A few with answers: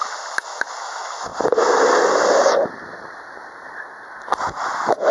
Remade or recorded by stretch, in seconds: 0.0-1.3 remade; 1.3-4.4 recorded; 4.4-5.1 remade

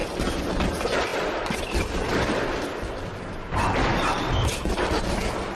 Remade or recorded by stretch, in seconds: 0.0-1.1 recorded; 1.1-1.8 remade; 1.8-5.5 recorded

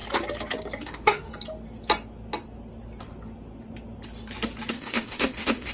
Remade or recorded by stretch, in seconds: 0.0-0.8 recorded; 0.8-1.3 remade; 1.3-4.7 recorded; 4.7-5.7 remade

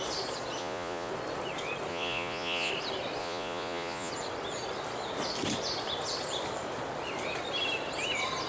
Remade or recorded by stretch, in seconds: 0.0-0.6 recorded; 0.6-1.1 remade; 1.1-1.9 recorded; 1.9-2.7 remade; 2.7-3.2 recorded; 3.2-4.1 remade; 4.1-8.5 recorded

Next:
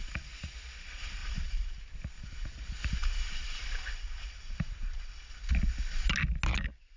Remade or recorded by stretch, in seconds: 0.0-1.2 recorded; 1.2-1.8 remade; 1.8-3.0 recorded; 3.0-5.3 remade; 5.3-7.0 recorded

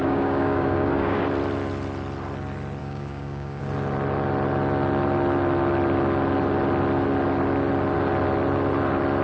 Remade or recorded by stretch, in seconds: 0.0-1.2 remade; 1.2-2.8 recorded; 2.8-3.6 remade; 3.6-9.2 recorded

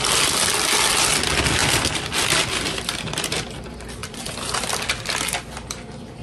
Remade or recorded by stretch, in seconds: 0.0-6.2 recorded